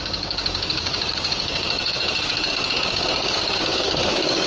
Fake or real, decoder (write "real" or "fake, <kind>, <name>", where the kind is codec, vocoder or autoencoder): fake, codec, DAC